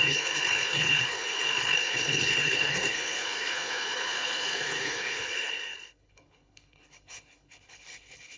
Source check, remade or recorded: remade